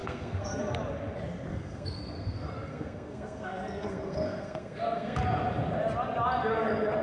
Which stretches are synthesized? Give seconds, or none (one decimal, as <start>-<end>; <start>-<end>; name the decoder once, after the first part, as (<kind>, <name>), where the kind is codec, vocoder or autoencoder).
0.0-0.6 (codec, SNAC); 1.5-5.2